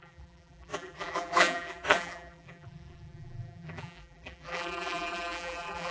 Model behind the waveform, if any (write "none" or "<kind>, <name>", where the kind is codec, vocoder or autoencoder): vocoder, BigVGAN v2